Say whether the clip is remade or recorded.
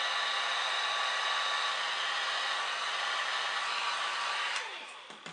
recorded